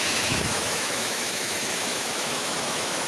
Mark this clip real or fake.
fake